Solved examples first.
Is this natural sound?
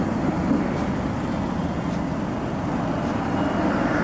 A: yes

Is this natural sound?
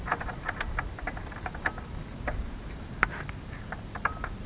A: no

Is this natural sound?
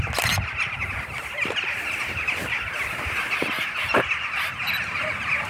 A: yes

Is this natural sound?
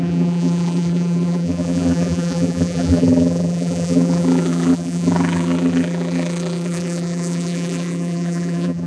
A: no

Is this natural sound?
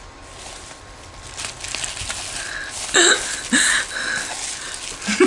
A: yes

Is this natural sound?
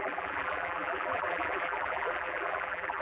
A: no